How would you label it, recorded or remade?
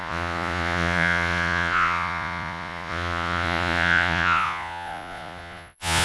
remade